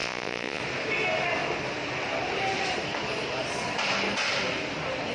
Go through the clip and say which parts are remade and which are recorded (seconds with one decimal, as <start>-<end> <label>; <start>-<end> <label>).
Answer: 0.0-0.6 remade; 0.6-5.1 recorded